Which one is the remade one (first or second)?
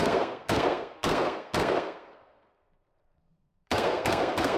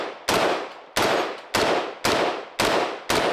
first